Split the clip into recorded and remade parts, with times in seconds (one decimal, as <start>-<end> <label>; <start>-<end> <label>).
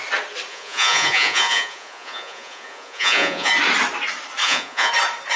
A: 0.0-0.5 recorded; 0.5-3.5 remade; 3.5-4.4 recorded; 4.4-4.9 remade; 4.9-5.4 recorded